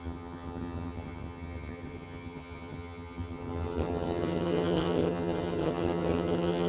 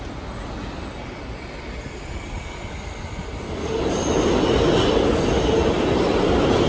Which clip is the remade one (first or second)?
first